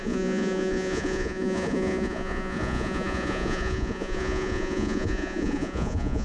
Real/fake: fake